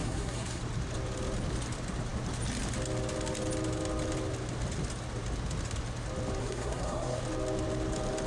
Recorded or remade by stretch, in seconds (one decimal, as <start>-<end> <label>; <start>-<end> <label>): 0.0-0.6 remade; 0.6-6.4 recorded; 6.4-7.2 remade; 7.2-8.3 recorded